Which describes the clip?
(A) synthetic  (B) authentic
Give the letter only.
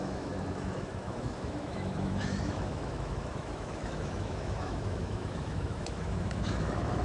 A